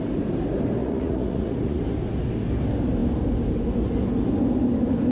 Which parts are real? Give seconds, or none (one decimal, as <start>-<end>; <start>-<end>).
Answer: 0.0-0.8; 1.8-5.1